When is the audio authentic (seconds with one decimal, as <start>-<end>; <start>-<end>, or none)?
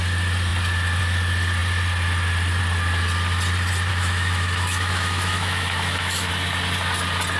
0.0-3.9; 6.3-7.4